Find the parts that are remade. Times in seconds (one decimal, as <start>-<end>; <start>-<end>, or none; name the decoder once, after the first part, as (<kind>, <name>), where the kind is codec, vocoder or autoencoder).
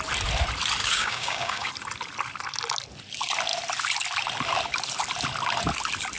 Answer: 0.8-1.7 (codec, DAC)